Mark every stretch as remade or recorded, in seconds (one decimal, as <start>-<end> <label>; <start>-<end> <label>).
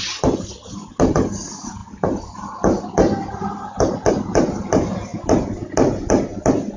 0.0-6.8 recorded